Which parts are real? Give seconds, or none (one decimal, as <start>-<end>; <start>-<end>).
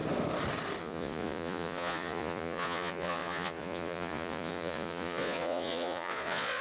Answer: 0.0-0.8